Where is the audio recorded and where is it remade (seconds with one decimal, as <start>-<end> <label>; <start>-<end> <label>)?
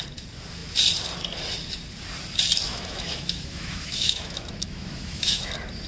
0.0-2.7 recorded; 2.7-5.5 remade; 5.5-5.9 recorded